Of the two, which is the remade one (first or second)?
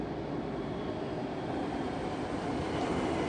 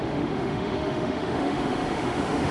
second